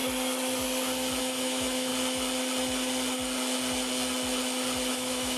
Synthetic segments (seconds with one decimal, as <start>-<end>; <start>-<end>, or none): 1.2-1.9; 4.9-5.4